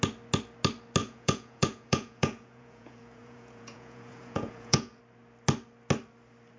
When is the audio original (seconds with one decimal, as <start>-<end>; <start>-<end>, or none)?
0.0-1.0; 5.0-6.6